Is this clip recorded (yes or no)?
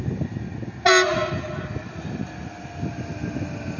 yes